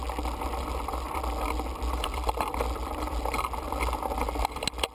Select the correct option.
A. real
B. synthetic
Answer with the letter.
A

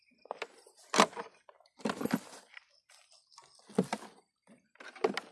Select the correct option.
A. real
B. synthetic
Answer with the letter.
A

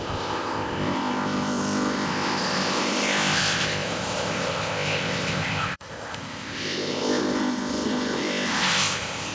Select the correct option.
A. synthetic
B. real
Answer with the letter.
A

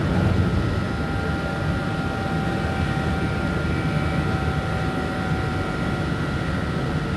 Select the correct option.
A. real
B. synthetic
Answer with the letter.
A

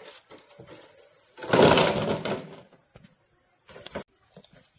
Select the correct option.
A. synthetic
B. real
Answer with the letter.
B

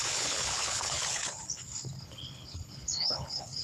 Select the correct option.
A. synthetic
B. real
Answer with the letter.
A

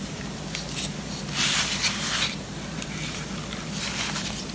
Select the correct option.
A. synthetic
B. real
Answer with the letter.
B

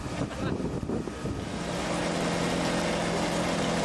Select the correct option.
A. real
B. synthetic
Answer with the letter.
A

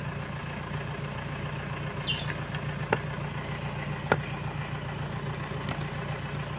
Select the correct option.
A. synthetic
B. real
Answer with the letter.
B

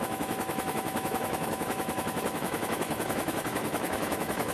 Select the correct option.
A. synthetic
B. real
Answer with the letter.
A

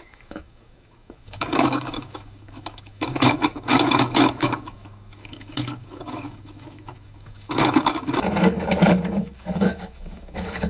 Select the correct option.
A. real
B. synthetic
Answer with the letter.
B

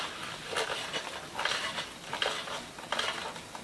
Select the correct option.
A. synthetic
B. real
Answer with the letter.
B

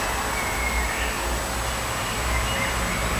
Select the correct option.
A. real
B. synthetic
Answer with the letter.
A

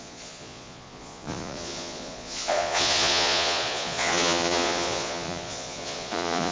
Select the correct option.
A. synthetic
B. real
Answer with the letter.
A